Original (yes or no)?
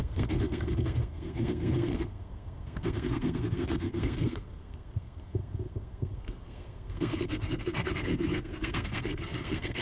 no